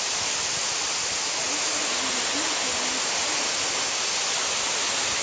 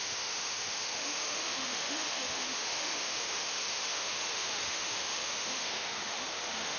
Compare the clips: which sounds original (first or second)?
first